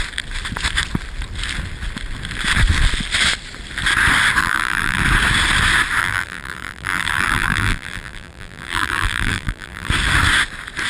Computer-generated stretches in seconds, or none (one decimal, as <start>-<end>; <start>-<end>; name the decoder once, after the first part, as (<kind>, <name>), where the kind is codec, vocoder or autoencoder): 4.4-5.0 (vocoder, BigVGAN v2); 6.0-9.9

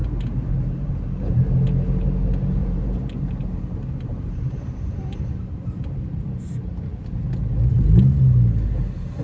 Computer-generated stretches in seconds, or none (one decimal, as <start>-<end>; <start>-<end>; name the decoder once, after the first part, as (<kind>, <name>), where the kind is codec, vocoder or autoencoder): 0.0-0.9 (vocoder, BigVGAN v2); 2.6-5.4